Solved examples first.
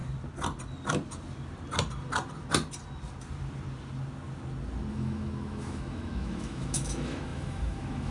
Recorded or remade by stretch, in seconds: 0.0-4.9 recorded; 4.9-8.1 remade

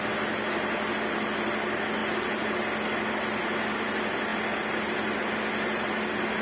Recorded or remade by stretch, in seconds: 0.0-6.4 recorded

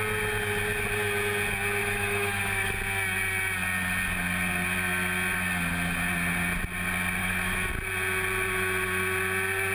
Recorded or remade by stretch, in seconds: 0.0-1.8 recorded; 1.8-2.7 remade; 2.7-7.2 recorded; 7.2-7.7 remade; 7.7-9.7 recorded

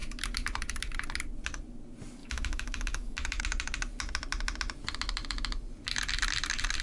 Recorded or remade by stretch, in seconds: 0.0-2.2 recorded; 2.2-3.4 remade; 3.4-6.8 recorded

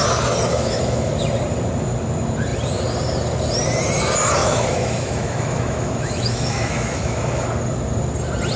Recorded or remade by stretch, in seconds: 0.0-0.5 recorded; 0.5-1.1 remade; 1.1-4.4 recorded; 4.4-7.5 remade; 7.5-8.6 recorded

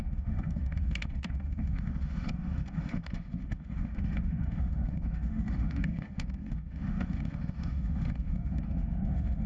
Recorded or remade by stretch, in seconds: 0.0-9.5 remade

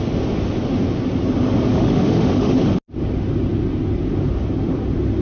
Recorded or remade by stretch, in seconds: 0.0-1.7 recorded; 1.7-2.5 remade; 2.5-5.2 recorded